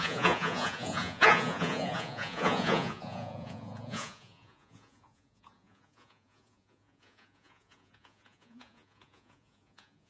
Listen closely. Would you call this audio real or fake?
fake